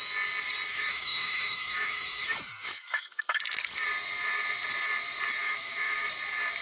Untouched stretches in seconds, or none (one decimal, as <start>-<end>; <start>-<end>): 0.0-0.7; 3.4-5.4; 6.1-6.6